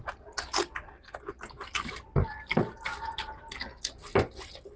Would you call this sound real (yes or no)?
yes